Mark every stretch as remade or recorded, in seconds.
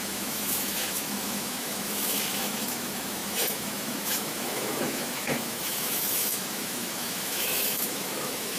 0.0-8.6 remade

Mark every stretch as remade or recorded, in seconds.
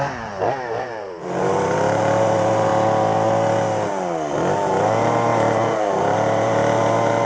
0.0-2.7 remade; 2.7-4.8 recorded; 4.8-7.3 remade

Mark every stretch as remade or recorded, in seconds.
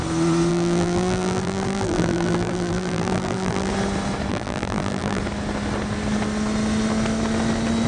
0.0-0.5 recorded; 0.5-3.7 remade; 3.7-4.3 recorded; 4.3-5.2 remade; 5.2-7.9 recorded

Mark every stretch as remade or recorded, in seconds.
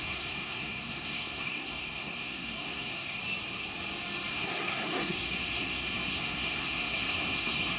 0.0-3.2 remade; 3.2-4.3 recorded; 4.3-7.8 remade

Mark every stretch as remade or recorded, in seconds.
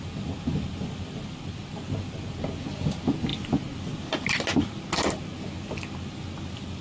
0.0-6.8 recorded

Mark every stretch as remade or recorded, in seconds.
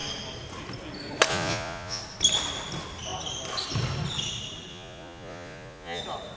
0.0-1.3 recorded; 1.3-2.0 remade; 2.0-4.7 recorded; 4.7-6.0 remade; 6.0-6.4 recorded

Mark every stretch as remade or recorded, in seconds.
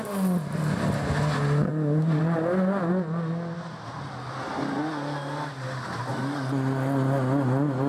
0.0-7.9 recorded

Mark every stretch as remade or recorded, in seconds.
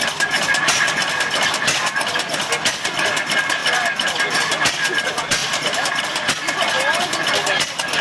0.0-5.4 recorded; 5.4-6.0 remade; 6.0-8.0 recorded